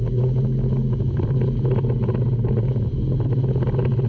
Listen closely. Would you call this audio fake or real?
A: real